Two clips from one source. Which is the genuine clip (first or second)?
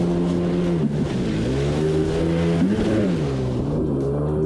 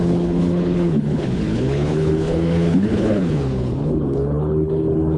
first